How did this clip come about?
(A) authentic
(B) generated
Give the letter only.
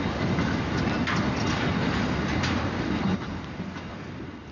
A